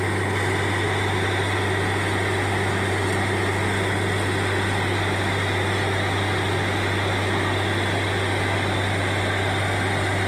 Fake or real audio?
real